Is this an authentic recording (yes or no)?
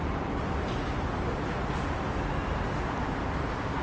yes